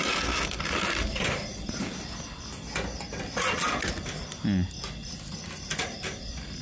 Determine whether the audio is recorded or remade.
recorded